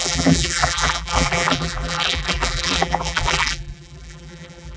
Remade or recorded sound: remade